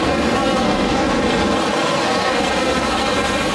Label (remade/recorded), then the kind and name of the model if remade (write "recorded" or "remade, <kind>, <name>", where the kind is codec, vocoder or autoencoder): remade, codec, SNAC